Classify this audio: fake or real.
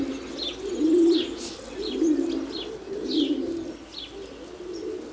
real